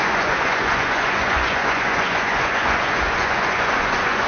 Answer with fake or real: fake